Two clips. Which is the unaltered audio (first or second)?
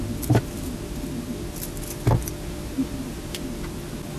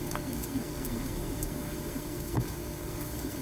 first